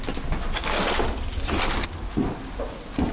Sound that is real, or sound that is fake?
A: real